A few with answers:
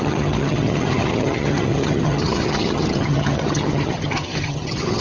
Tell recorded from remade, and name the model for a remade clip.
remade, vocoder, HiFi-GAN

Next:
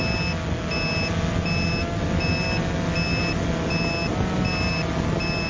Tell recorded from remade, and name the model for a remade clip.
recorded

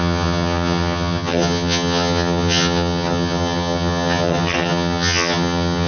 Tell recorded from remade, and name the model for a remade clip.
remade, vocoder, HiFi-GAN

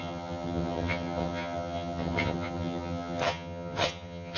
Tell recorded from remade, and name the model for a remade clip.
remade, vocoder, HiFi-GAN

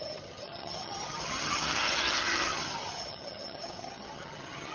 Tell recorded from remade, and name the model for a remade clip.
remade, vocoder, HiFi-GAN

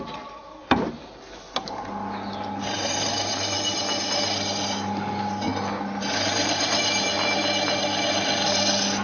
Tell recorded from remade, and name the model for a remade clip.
recorded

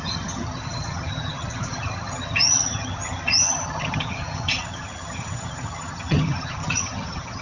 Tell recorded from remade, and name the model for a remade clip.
remade, vocoder, HiFi-GAN